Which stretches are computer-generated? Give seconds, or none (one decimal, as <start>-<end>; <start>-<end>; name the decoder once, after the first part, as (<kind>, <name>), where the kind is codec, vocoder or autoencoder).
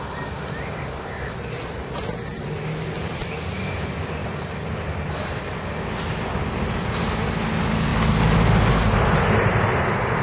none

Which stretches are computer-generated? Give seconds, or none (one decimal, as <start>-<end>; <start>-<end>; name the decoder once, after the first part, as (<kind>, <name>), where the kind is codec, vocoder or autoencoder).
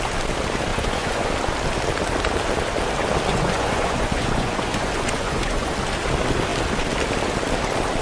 0.7-1.3 (vocoder, Vocos); 3.3-5.7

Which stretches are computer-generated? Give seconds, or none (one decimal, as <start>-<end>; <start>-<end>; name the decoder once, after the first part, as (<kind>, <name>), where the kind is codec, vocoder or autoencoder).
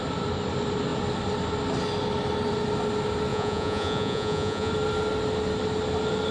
3.3-4.7 (vocoder, Vocos)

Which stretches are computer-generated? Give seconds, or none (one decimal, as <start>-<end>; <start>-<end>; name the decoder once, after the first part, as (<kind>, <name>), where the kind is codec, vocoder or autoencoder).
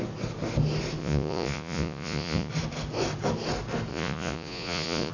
1.0-2.5 (vocoder, Vocos); 3.9-5.1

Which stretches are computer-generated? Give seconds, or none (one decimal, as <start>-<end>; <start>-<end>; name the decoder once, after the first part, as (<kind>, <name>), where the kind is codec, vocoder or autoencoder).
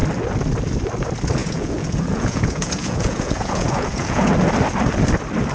1.4-4.3 (vocoder, Vocos)